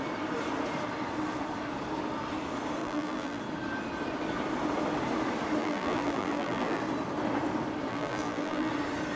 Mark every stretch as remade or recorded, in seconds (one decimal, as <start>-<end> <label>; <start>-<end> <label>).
0.0-2.8 recorded; 2.8-3.4 remade; 3.4-5.6 recorded; 5.6-6.8 remade; 6.8-7.9 recorded; 7.9-8.7 remade; 8.7-9.2 recorded